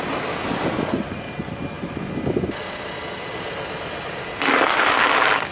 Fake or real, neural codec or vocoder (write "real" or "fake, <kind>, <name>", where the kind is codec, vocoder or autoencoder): real